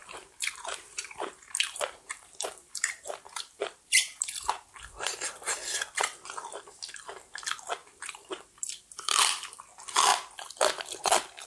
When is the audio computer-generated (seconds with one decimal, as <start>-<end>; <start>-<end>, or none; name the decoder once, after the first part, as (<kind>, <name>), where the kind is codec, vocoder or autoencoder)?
0.0-4.9 (vocoder, BigVGAN v2); 7.8-9.6